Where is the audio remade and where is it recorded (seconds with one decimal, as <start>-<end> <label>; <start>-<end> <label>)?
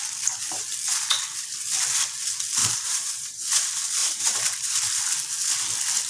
0.0-2.6 recorded; 2.6-3.5 remade; 3.5-4.0 recorded; 4.0-5.0 remade; 5.0-6.1 recorded